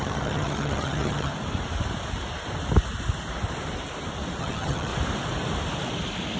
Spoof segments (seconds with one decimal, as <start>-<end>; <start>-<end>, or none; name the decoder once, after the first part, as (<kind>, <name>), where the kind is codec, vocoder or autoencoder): 0.0-1.3 (vocoder, HiFi-GAN); 4.4-4.9